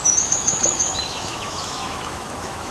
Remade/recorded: remade